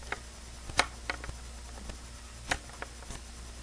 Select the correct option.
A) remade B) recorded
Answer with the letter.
B